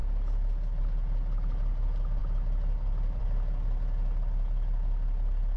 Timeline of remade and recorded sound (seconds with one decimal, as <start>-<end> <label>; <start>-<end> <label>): 0.0-5.6 recorded

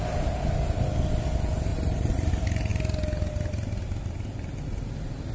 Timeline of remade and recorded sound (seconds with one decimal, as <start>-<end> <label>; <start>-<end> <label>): 0.0-1.7 recorded; 1.7-2.3 remade; 2.3-5.3 recorded

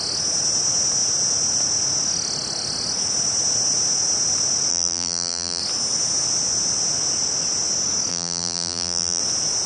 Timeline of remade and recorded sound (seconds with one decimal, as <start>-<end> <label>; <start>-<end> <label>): 0.0-4.7 recorded; 4.7-5.6 remade; 5.6-8.1 recorded; 8.1-9.2 remade; 9.2-9.7 recorded